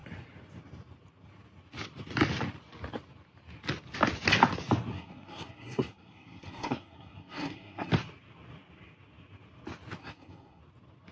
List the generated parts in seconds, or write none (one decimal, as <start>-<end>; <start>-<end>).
4.9-7.9; 10.0-10.6